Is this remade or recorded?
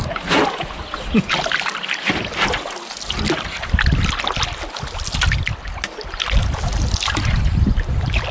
recorded